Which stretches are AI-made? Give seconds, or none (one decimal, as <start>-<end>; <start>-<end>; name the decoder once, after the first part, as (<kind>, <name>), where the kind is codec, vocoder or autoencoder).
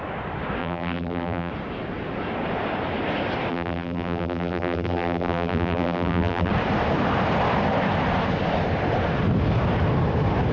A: 0.6-1.5 (vocoder, BigVGAN v2); 3.5-6.5